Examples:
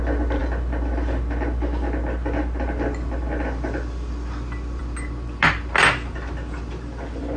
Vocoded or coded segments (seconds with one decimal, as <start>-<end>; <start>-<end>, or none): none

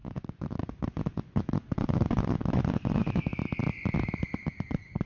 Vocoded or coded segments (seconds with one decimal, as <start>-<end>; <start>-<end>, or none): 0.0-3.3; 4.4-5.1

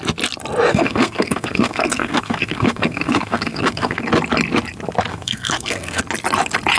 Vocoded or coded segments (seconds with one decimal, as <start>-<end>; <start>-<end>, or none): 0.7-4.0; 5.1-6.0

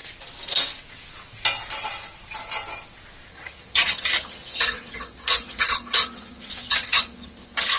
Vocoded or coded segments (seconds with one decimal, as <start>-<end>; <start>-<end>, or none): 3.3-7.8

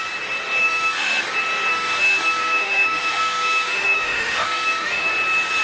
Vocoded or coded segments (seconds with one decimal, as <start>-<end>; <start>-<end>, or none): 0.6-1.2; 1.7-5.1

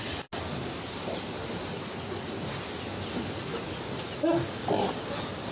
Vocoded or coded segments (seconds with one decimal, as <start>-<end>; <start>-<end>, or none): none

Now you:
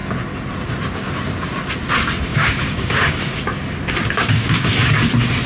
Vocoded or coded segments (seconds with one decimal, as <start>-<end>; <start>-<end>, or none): 2.3-3.3; 4.2-4.9